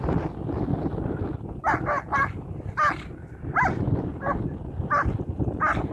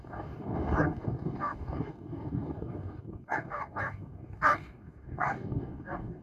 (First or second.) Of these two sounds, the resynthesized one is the second